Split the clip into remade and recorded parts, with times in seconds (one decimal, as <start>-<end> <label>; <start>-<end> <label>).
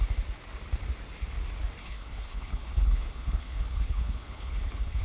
0.0-1.8 recorded; 1.8-5.0 remade